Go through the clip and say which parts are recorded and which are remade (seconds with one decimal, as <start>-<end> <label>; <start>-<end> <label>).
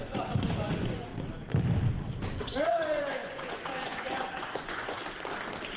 0.0-1.1 remade; 1.1-2.4 recorded; 2.4-5.0 remade; 5.0-5.8 recorded